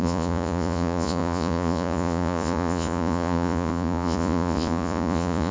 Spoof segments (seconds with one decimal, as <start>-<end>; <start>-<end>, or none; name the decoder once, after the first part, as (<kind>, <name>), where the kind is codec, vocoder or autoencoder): 0.0-5.5 (vocoder, Vocos)